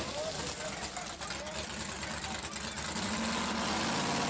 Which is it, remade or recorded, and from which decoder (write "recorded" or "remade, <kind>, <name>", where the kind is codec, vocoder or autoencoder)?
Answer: recorded